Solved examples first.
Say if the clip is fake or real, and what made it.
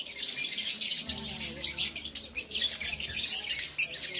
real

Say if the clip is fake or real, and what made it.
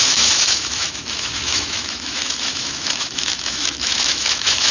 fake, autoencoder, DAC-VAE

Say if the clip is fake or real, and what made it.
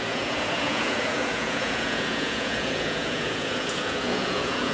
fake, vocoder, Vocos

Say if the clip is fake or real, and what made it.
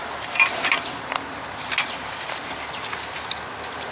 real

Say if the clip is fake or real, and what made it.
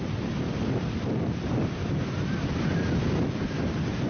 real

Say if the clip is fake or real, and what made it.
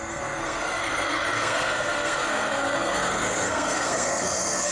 fake, codec, SNAC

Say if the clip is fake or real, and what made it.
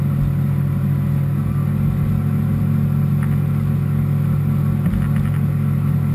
real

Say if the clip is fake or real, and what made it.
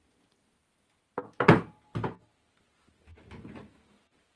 real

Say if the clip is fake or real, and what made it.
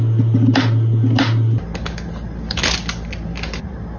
real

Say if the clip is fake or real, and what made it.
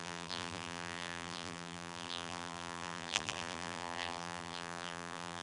fake, vocoder, BigVGAN v2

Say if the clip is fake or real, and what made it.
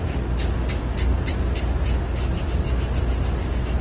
real